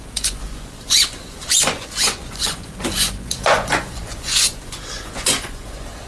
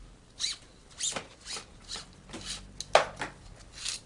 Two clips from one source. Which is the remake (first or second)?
first